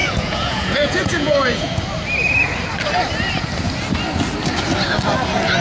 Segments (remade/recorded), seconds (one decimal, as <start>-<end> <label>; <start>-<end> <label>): 0.0-1.8 remade; 1.8-5.6 recorded